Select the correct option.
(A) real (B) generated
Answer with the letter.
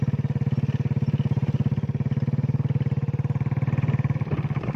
A